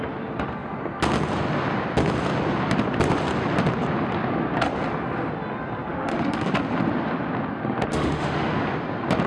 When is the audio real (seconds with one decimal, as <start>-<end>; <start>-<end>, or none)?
0.0-5.9; 6.5-7.9; 8.5-9.3